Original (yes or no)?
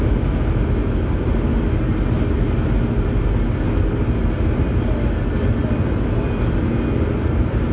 yes